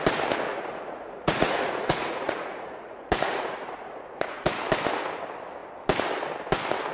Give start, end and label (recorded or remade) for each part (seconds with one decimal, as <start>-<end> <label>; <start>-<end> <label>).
0.0-0.5 recorded; 0.5-4.6 remade; 4.6-6.9 recorded